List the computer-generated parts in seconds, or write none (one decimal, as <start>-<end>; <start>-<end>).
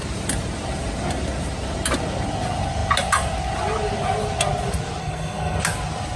5.0-5.6